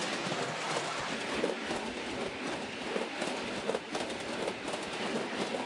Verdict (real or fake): real